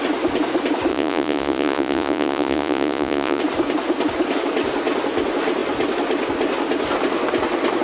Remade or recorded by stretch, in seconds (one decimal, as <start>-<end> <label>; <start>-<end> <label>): 0.0-0.9 recorded; 0.9-3.4 remade; 3.4-7.8 recorded